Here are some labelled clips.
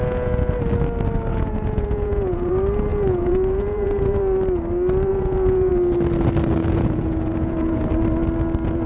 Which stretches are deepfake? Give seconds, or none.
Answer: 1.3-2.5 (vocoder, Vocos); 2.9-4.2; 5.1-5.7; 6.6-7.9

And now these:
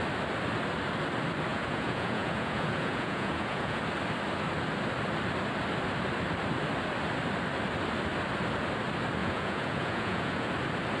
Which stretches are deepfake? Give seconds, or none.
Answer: 1.5-3.8 (vocoder, Vocos); 9.2-10.5